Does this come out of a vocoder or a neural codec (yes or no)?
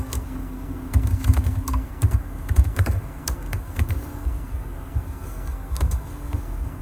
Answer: yes